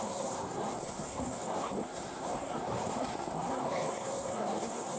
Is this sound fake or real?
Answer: fake